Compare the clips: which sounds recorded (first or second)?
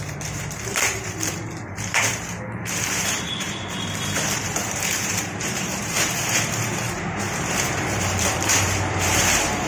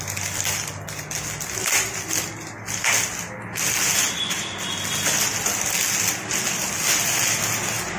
second